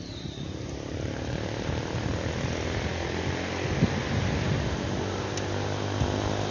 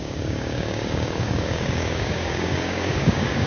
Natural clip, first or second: first